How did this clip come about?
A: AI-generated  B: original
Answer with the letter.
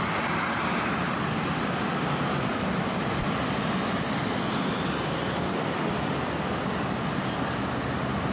B